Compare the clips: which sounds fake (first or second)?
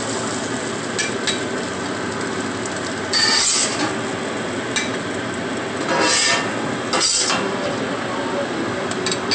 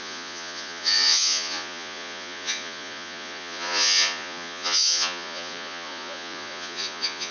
second